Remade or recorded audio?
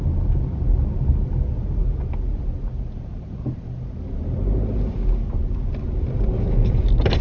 recorded